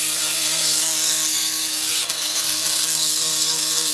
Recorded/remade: remade